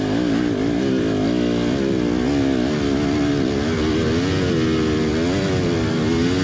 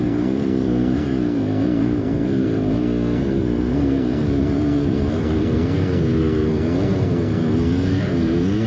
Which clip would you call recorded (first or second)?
first